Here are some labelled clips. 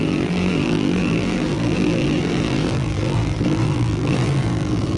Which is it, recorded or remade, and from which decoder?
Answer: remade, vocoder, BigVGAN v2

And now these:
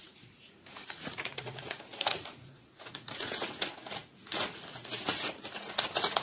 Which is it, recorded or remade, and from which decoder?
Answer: remade, vocoder, Vocos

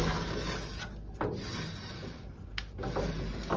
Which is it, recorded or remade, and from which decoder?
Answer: recorded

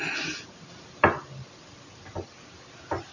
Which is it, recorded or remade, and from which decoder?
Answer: recorded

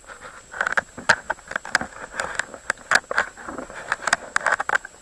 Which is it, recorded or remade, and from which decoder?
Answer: recorded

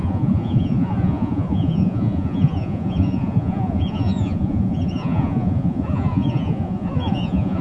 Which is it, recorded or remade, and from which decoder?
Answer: remade, vocoder, Vocos